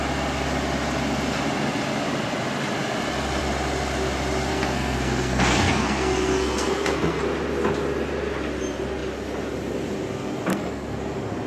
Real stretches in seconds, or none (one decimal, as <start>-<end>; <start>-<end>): 0.0-4.5; 7.2-10.5; 11.0-11.5